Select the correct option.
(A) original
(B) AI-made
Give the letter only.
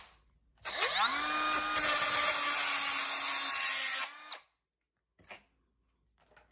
A